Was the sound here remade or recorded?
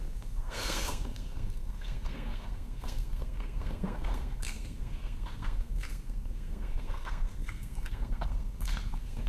remade